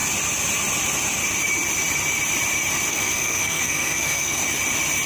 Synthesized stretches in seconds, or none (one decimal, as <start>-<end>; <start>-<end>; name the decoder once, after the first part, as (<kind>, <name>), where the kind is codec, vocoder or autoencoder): 2.9-4.4 (codec, SNAC)